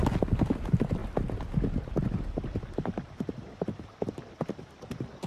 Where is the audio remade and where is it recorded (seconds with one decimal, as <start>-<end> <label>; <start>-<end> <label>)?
0.0-5.3 recorded